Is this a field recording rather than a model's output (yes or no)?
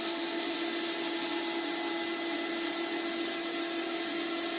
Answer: yes